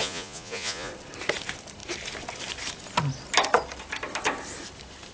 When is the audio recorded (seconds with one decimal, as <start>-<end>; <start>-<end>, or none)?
0.9-5.1